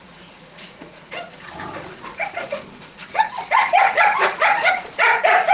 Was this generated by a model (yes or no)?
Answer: yes